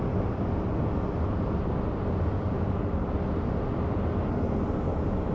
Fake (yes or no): no